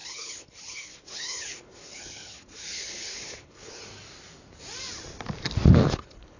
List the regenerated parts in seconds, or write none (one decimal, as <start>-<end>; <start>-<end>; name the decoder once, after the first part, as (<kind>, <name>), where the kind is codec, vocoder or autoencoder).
0.0-3.8 (codec, HILCodec); 5.8-6.4